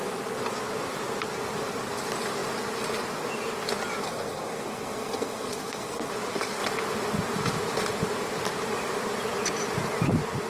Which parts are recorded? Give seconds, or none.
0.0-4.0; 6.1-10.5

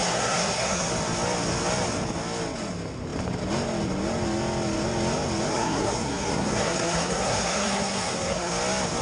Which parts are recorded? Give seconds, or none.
0.9-5.5; 8.5-9.0

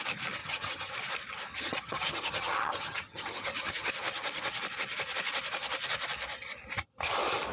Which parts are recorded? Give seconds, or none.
0.0-0.4; 0.9-1.5; 3.9-7.5

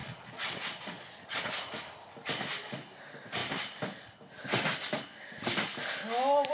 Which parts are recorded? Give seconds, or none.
1.5-6.5

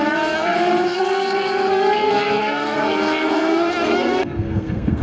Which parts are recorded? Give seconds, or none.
none

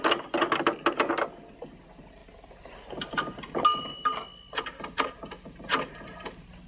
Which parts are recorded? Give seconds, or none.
0.0-6.7